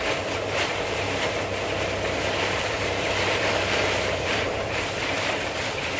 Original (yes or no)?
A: no